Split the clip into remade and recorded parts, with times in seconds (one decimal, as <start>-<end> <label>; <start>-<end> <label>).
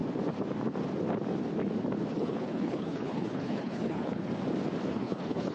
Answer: 0.0-2.1 recorded; 2.1-4.3 remade; 4.3-4.9 recorded; 4.9-5.5 remade